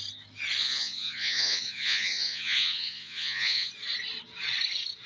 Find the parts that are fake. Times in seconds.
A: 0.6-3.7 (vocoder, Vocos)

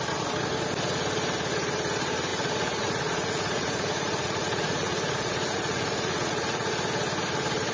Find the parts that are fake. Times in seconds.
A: 2.3-6.7 (vocoder, Vocos)